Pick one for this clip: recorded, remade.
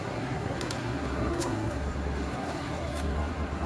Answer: remade